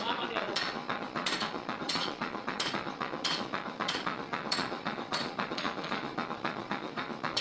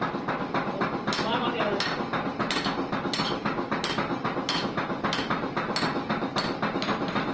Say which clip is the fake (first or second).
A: first